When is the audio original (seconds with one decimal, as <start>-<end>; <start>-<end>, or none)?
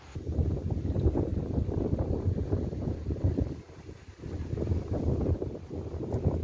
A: 0.0-6.4